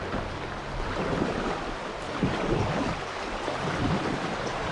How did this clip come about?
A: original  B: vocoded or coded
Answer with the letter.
A